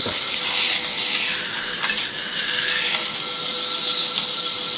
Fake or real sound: real